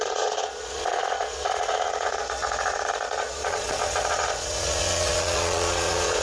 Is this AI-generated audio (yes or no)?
yes